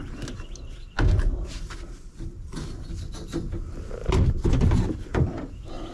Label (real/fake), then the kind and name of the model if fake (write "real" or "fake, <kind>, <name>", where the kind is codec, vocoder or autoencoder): real